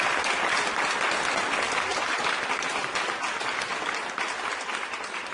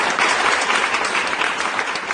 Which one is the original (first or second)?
first